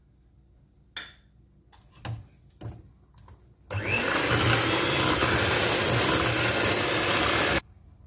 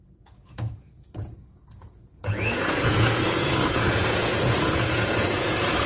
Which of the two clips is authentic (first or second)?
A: first